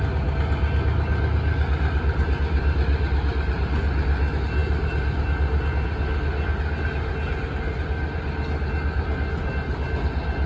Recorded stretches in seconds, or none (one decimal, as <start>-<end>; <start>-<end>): 0.0-10.5